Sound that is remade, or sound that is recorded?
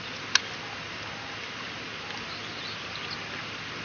recorded